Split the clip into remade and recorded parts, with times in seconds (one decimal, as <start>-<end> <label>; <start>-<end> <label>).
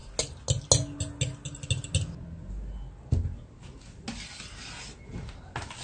0.0-5.8 recorded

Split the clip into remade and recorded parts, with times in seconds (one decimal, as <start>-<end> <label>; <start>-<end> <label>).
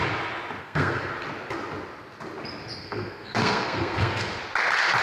0.0-0.6 recorded; 0.6-1.1 remade; 1.1-2.8 recorded; 2.8-4.4 remade; 4.4-5.0 recorded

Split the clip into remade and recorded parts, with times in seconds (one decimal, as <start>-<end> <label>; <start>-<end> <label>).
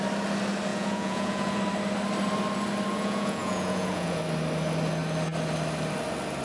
0.0-0.7 recorded; 0.7-1.6 remade; 1.6-2.9 recorded; 2.9-4.2 remade; 4.2-6.4 recorded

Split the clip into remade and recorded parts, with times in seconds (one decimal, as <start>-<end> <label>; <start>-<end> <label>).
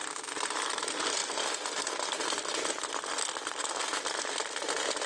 0.0-0.7 remade; 0.7-5.1 recorded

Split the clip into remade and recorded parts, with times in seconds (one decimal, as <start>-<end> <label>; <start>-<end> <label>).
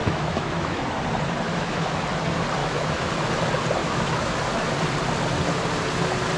0.0-0.8 remade; 0.8-1.5 recorded; 1.5-2.0 remade; 2.0-2.6 recorded; 2.6-3.1 remade; 3.1-3.8 recorded; 3.8-4.4 remade; 4.4-6.4 recorded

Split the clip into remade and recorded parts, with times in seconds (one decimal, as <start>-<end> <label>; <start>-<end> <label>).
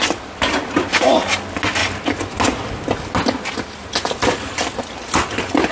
0.0-5.7 recorded